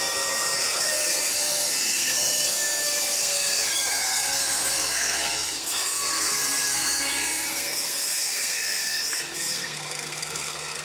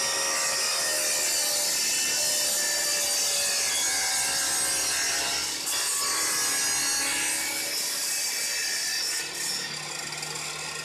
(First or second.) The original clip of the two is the second